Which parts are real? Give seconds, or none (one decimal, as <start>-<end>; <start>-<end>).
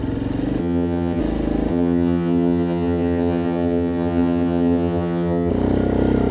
0.0-0.6; 1.2-1.7; 5.5-6.3